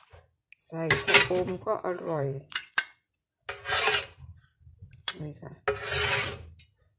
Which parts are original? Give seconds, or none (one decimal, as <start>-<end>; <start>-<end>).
0.0-1.5; 3.1-5.0; 5.6-7.0